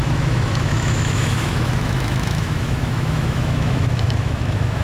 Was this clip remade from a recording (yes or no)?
yes